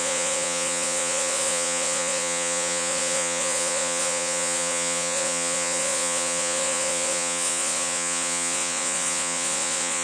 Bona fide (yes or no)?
no